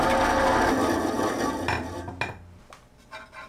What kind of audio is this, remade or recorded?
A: recorded